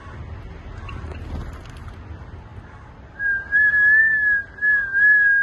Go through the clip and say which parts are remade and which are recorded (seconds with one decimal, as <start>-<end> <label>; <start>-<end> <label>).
0.0-5.4 recorded